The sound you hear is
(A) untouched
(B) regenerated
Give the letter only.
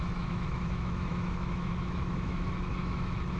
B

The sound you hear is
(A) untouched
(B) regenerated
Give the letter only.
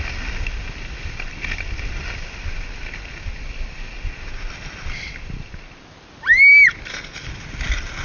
A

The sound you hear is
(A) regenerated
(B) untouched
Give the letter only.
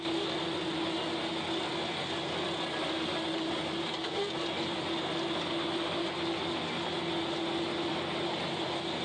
B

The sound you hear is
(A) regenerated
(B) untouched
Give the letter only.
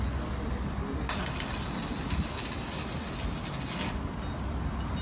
B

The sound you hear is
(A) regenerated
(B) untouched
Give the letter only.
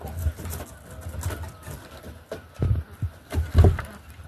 B